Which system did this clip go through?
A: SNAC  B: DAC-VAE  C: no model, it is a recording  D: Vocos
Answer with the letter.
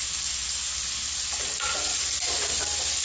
C